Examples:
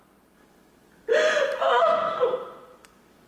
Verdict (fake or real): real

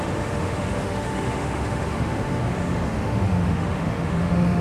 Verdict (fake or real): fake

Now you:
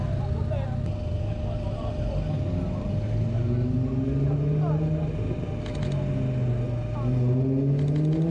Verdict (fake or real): real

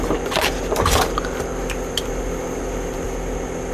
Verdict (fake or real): real